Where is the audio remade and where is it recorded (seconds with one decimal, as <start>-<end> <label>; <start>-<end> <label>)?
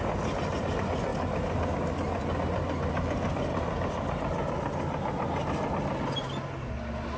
0.0-7.2 recorded